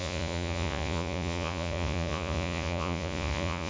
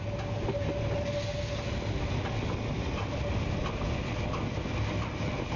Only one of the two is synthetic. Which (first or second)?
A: first